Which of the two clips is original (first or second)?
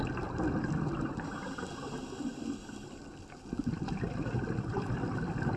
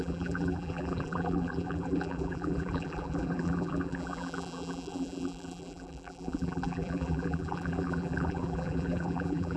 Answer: first